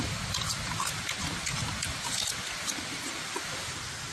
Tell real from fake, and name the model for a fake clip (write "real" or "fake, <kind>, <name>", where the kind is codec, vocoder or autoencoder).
real